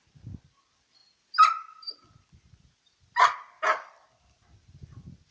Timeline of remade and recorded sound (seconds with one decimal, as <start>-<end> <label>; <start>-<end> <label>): 0.0-5.3 recorded